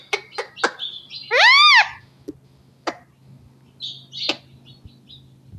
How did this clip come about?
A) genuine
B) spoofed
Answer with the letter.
A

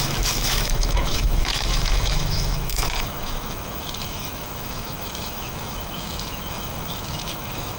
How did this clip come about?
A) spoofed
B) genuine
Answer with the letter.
A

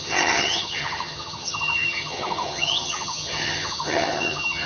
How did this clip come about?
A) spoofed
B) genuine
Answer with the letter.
A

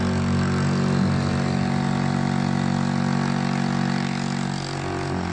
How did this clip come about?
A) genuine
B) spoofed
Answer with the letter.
A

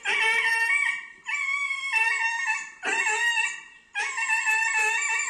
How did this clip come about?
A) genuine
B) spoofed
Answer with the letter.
A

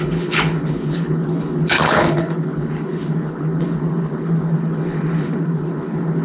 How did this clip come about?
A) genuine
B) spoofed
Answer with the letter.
B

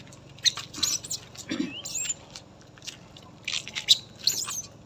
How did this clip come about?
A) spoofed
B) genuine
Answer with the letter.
B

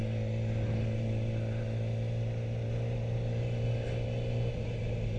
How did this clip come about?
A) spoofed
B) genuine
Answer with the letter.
B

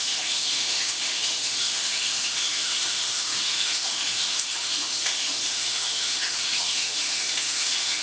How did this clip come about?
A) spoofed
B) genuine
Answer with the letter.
A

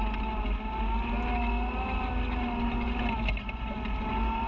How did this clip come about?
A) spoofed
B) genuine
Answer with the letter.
B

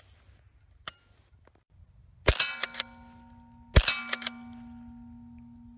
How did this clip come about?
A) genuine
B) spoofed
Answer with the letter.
A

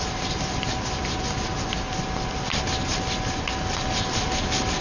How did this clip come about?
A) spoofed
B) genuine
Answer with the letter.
B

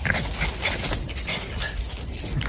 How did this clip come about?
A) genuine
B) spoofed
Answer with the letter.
A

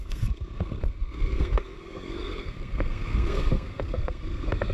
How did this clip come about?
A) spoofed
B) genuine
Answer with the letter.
A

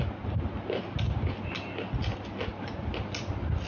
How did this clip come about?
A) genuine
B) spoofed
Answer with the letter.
A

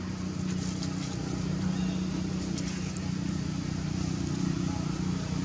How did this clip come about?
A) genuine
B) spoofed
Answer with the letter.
A